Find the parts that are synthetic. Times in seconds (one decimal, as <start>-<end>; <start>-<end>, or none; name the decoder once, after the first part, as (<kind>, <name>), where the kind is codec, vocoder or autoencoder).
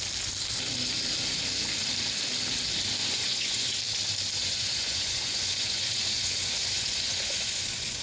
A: 3.0-3.8 (vocoder, Vocos); 4.4-8.0